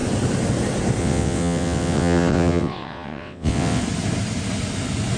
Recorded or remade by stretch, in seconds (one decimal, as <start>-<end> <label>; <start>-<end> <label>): 0.0-1.0 recorded; 1.0-3.8 remade; 3.8-5.2 recorded